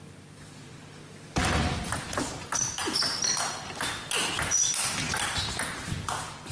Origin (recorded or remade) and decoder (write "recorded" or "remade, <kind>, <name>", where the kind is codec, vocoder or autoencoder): recorded